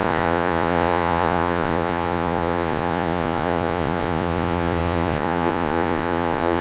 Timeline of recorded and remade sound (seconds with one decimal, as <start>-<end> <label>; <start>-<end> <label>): 0.0-6.6 remade